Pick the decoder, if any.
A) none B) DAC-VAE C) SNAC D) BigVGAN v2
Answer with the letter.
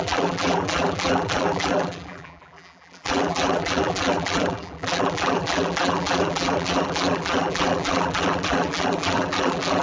D